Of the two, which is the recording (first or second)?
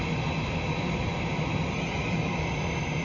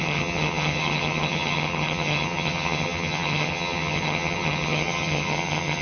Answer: first